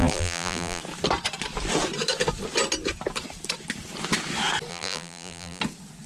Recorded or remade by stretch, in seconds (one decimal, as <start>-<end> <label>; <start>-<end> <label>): 0.0-0.8 remade; 0.8-4.7 recorded; 4.7-5.6 remade; 5.6-6.1 recorded